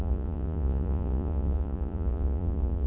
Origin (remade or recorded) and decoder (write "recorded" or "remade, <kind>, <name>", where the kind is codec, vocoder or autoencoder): remade, vocoder, Vocos